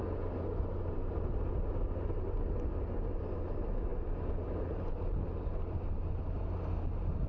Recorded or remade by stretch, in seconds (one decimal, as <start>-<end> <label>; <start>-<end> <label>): 0.0-7.3 recorded